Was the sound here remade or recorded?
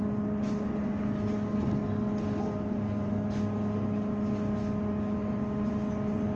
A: recorded